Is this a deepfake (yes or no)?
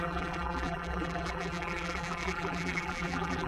yes